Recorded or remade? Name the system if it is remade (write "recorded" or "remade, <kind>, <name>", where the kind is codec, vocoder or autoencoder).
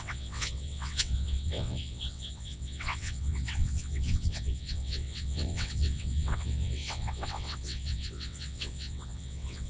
remade, vocoder, WaveNeXt